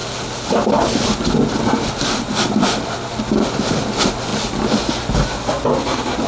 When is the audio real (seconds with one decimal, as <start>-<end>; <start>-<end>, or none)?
0.0-4.3; 5.1-6.3